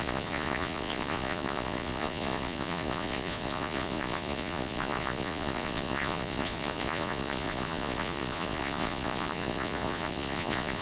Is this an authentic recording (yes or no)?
no